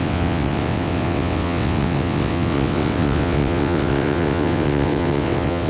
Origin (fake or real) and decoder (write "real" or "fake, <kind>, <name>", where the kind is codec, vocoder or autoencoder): fake, vocoder, WaveNeXt